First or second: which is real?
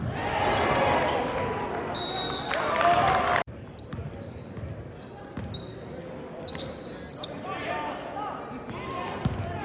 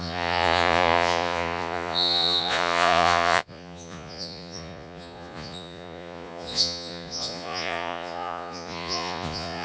first